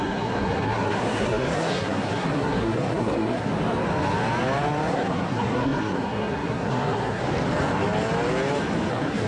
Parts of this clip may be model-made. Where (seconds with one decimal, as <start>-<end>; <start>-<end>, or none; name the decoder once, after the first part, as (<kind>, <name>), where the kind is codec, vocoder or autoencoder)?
0.0-3.5 (codec, SNAC); 4.9-7.2; 8.9-9.3